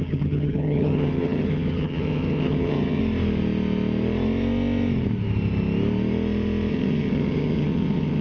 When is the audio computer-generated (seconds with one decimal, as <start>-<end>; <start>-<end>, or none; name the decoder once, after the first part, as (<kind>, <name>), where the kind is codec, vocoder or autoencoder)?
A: 0.0-3.0 (vocoder, HiFi-GAN); 6.7-8.2